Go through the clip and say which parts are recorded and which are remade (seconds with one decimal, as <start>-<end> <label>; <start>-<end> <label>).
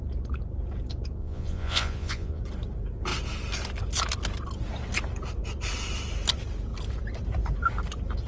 0.0-1.2 recorded; 1.2-2.4 remade; 2.4-8.3 recorded